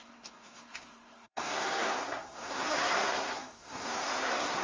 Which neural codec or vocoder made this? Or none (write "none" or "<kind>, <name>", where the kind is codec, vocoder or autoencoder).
codec, SNAC